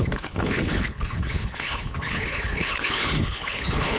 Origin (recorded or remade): remade